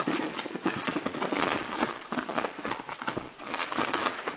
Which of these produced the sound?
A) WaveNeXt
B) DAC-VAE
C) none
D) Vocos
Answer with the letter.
D